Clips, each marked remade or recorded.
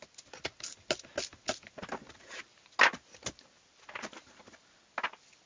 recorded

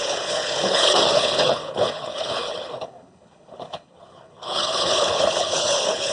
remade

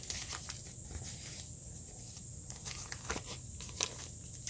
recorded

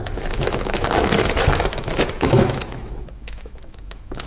remade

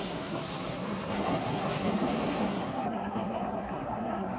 remade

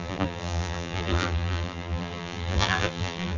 remade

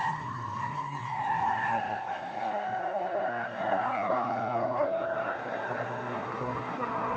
remade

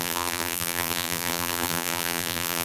remade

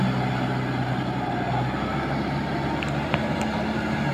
recorded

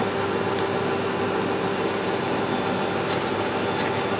recorded